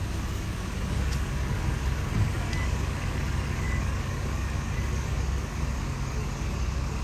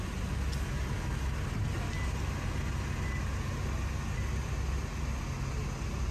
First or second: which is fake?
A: first